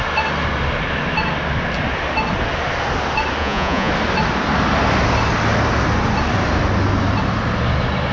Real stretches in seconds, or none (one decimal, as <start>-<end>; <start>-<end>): 0.0-3.4; 3.9-8.1